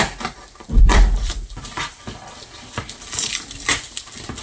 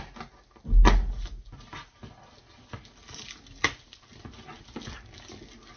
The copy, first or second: first